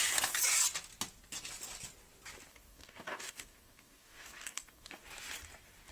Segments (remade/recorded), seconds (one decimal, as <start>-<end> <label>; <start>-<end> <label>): 0.0-2.5 recorded; 2.5-5.0 remade; 5.0-5.9 recorded